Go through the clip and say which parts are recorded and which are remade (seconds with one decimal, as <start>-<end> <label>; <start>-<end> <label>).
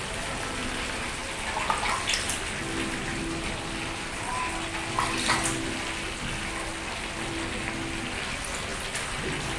0.0-9.6 recorded